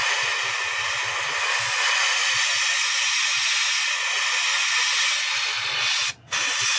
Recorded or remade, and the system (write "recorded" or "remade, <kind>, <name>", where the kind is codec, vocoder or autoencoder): recorded